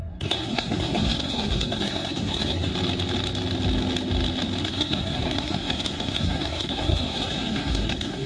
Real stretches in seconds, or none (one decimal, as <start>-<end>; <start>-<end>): 2.7-4.6